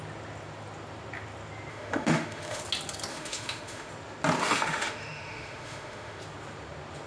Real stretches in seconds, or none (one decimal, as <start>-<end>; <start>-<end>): 0.0-1.7; 2.6-3.1; 3.9-4.4; 6.2-7.1